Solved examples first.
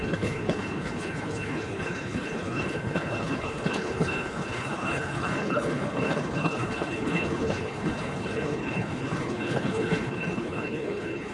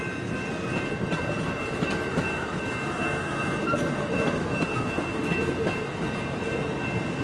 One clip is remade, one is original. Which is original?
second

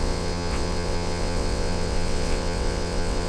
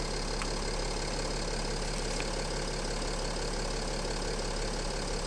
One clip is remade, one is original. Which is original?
second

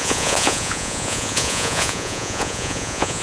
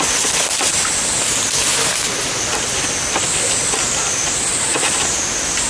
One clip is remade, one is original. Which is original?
second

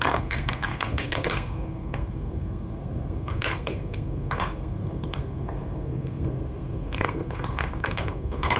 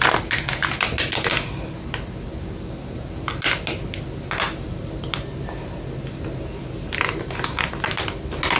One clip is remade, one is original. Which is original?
second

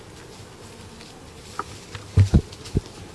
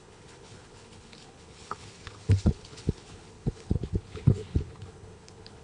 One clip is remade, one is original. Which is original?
first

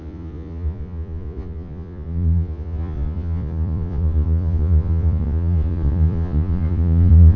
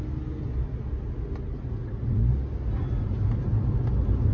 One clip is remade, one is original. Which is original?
second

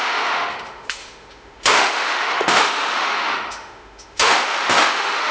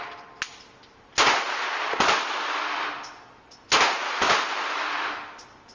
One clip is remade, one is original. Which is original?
second